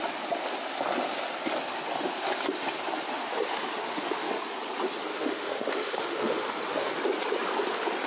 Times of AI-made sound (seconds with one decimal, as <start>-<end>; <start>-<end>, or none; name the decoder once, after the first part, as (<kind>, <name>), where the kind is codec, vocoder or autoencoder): 3.8-4.3 (autoencoder, DAC-VAE); 5.1-6.9